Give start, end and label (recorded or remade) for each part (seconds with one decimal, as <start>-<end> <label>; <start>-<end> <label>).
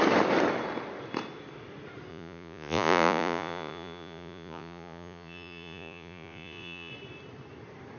0.0-2.1 recorded; 2.1-6.9 remade; 6.9-8.0 recorded